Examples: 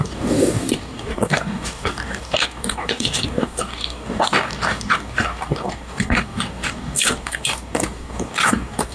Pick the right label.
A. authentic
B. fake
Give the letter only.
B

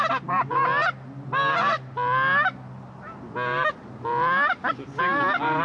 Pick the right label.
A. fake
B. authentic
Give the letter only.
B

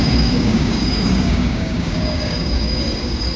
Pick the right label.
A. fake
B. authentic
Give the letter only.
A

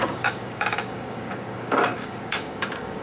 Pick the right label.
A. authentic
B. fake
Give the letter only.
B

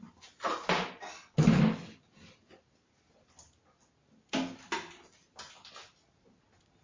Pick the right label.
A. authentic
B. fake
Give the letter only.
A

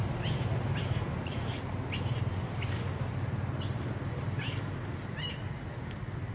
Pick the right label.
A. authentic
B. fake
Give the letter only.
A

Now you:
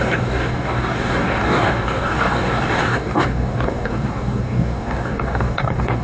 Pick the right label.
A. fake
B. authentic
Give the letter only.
A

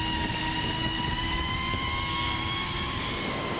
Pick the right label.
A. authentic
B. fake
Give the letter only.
B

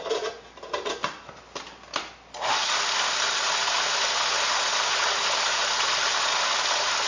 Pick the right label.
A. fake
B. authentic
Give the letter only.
B